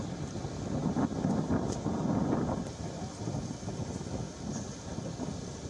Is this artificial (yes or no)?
no